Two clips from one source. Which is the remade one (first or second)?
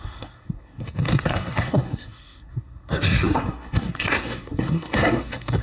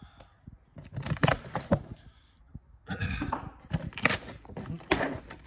first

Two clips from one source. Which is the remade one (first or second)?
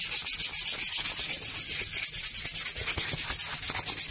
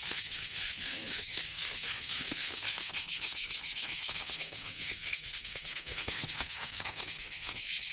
second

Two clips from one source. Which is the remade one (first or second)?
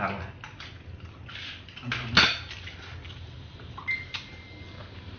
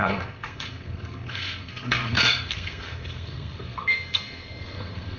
second